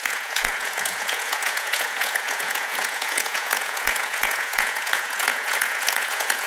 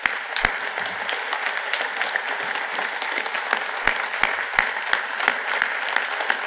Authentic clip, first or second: second